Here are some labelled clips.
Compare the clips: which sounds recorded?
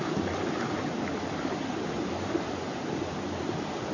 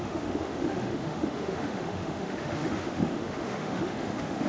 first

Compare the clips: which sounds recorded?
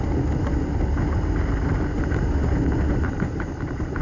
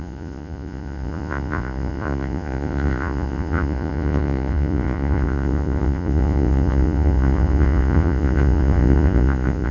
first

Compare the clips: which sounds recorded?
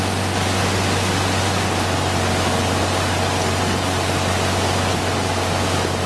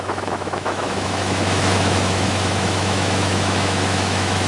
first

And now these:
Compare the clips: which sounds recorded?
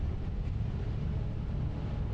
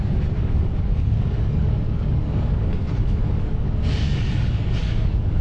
first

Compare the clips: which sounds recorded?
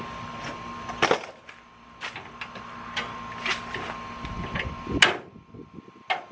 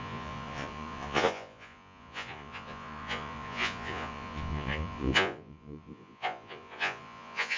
first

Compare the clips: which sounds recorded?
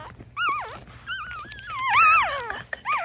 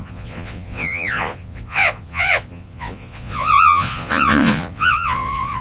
first